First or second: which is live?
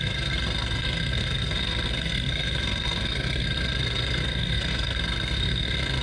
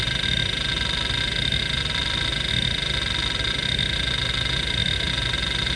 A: second